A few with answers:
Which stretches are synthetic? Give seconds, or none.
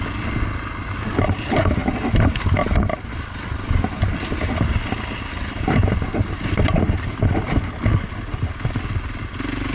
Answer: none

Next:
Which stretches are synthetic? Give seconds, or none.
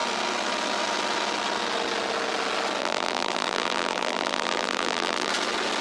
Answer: 2.8-5.3 (vocoder, BigVGAN v2)